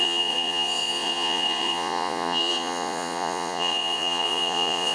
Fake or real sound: fake